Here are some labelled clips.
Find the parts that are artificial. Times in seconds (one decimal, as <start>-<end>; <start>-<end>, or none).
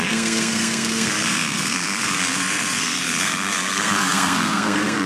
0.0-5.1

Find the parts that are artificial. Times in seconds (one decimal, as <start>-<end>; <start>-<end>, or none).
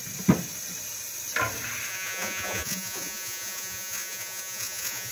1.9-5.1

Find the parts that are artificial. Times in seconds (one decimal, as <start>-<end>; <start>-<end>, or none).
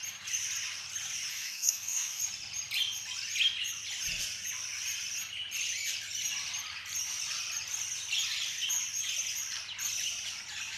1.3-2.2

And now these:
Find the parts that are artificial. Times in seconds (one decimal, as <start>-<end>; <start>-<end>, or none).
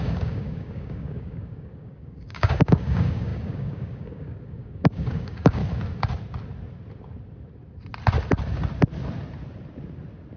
0.0-5.6